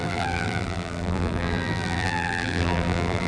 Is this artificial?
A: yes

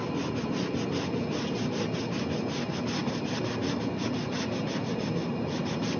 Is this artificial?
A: no